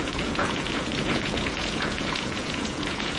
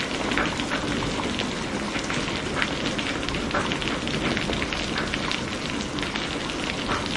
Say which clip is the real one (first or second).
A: second